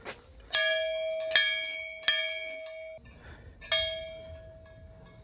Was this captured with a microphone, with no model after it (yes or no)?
yes